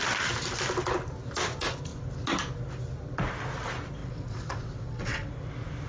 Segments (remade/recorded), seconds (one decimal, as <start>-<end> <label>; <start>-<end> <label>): 0.0-4.0 recorded; 4.0-5.3 remade; 5.3-5.9 recorded